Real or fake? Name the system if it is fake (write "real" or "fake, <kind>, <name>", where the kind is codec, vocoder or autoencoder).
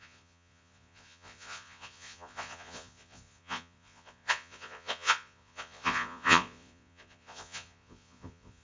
fake, vocoder, Vocos